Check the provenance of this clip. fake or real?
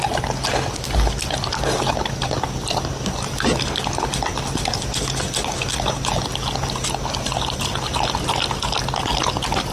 real